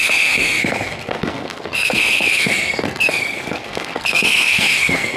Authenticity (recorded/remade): remade